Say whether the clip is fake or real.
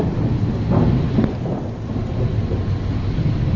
real